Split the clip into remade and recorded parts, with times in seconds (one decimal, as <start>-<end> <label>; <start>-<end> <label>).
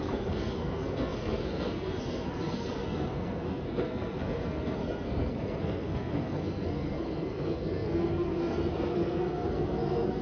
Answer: 0.0-10.2 remade